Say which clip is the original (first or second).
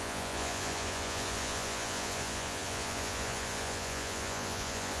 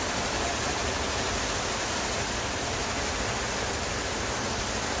second